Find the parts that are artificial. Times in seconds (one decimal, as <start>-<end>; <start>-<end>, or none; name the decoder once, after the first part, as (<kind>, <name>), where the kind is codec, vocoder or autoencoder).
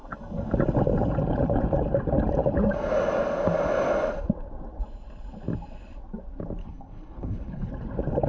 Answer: 6.6-7.7 (codec, HILCodec)